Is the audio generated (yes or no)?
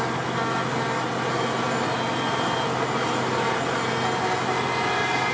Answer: no